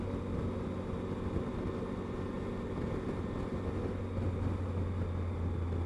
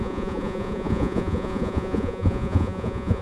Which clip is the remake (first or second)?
second